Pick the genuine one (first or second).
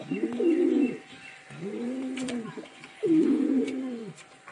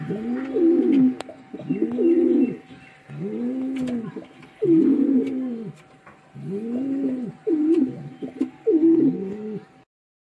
second